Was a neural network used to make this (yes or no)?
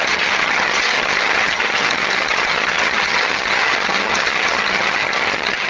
yes